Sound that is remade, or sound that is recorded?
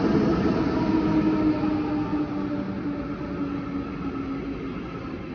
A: recorded